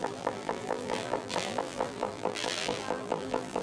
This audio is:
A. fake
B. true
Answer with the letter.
A